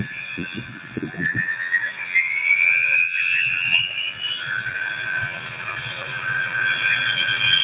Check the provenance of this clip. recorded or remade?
remade